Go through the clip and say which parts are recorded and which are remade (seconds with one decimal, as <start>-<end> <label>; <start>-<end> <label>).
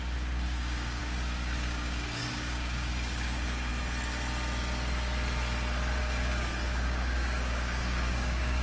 0.0-3.7 remade; 3.7-6.0 recorded; 6.0-8.6 remade